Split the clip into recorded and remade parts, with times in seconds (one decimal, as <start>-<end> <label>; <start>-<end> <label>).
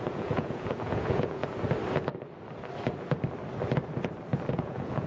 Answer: 0.0-1.4 remade; 1.4-4.5 recorded; 4.5-5.1 remade